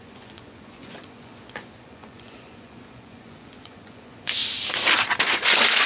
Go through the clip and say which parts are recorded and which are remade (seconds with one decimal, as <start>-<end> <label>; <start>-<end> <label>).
0.0-4.4 remade; 4.4-5.2 recorded; 5.2-5.9 remade